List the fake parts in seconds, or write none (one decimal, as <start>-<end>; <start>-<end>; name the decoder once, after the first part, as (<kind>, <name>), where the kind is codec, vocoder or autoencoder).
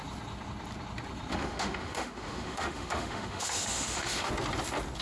1.3-4.3 (autoencoder, DAC-VAE)